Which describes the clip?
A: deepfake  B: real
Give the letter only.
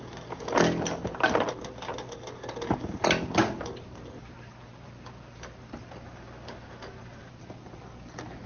B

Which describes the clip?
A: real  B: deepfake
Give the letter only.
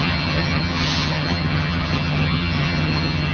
B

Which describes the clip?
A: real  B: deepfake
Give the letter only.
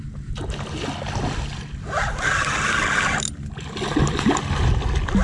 A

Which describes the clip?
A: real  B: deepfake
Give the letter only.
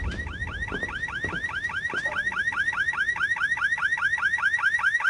A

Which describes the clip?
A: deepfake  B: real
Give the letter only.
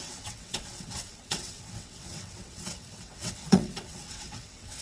A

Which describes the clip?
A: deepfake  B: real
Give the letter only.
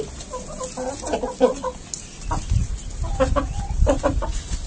B